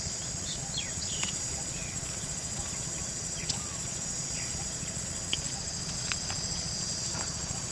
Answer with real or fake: fake